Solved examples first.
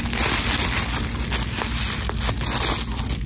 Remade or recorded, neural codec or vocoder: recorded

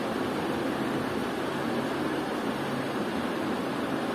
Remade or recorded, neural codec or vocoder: recorded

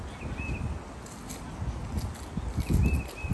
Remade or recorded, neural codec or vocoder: recorded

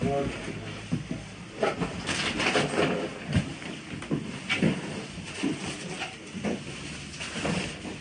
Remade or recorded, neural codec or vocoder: recorded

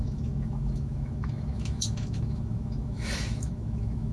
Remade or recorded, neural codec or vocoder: remade, autoencoder, DAC-VAE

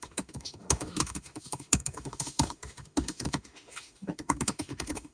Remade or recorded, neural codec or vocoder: remade, autoencoder, DAC-VAE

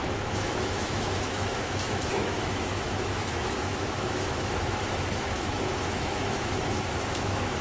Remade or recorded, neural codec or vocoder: remade, autoencoder, DAC-VAE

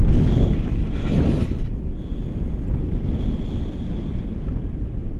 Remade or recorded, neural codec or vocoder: recorded